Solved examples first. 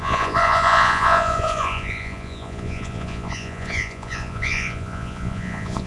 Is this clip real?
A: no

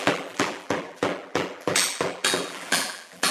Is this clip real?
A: no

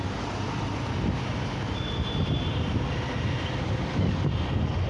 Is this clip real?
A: yes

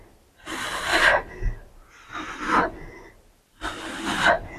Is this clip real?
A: yes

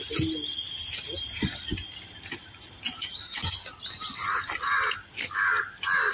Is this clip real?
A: yes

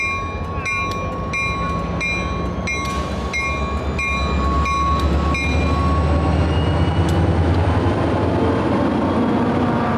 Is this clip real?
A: yes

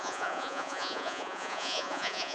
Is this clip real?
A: no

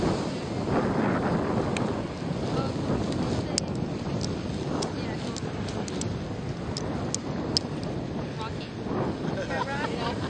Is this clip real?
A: yes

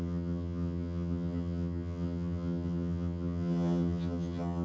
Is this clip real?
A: no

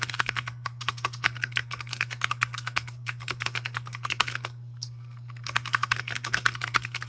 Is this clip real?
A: no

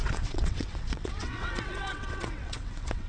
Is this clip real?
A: no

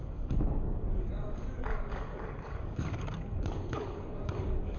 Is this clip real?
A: no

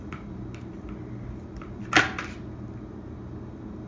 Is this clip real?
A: yes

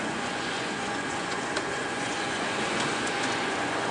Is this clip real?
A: no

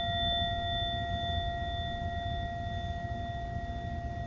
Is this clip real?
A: yes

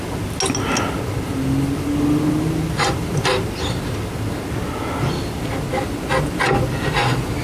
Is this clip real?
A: yes